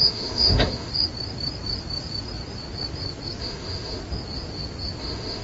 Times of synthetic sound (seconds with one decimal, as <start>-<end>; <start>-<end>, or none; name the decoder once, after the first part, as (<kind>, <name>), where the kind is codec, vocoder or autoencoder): 0.0-0.9 (autoencoder, DAC-VAE); 3.4-4.0; 5.0-5.4